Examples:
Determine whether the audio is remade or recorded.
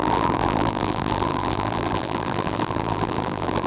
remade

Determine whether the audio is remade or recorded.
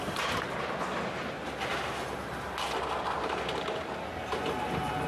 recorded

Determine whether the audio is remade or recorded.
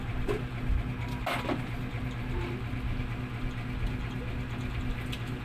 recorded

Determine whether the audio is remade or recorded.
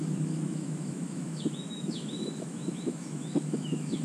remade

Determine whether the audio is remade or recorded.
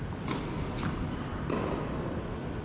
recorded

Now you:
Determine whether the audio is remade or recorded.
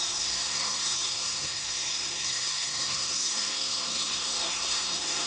remade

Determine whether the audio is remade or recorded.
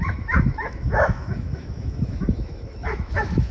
remade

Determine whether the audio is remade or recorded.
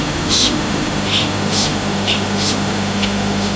remade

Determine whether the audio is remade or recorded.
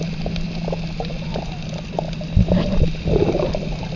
recorded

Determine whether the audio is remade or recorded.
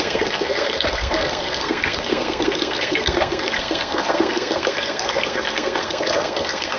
remade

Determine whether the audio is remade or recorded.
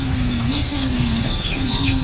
remade